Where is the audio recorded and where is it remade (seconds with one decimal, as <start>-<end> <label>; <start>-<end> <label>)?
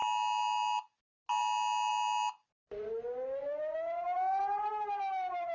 0.0-5.5 recorded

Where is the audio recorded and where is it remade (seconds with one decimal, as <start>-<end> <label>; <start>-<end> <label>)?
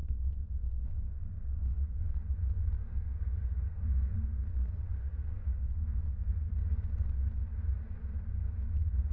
0.0-2.2 remade; 2.2-2.8 recorded; 2.8-6.5 remade; 6.5-9.1 recorded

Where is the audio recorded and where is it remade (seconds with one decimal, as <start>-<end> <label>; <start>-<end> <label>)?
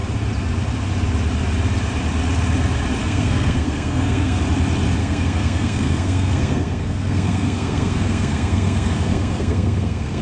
0.0-3.0 recorded; 3.0-4.4 remade; 4.4-5.0 recorded; 5.0-10.2 remade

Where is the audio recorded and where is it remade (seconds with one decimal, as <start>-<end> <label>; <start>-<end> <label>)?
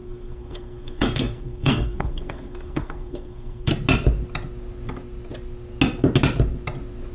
0.0-3.7 remade; 3.7-7.1 recorded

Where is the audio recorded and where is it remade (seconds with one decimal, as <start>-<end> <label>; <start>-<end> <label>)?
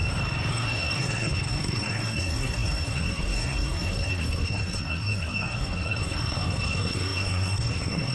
0.0-0.5 recorded; 0.5-8.1 remade